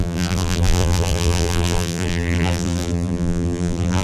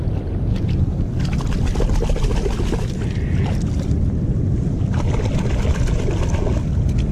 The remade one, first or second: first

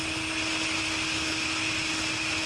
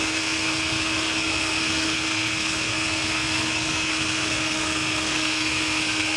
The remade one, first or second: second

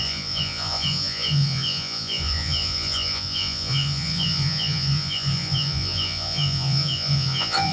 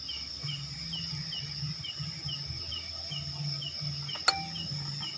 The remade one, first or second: first